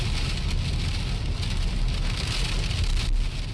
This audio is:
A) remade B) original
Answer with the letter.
B